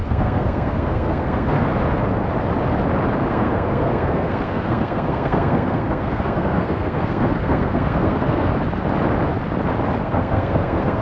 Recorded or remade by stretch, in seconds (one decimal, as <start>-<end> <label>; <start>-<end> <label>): 0.0-1.7 remade; 1.7-3.3 recorded; 3.3-8.5 remade; 8.5-10.0 recorded; 10.0-11.0 remade

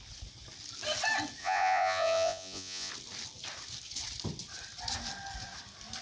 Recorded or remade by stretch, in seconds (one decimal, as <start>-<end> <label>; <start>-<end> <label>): 0.0-1.4 recorded; 1.4-2.9 remade; 2.9-6.0 recorded